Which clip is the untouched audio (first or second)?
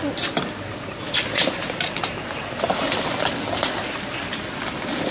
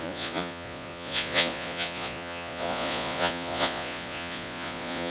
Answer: first